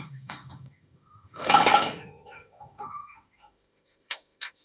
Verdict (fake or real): fake